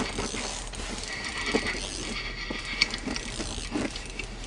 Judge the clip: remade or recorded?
recorded